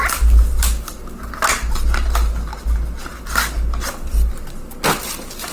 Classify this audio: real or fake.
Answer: real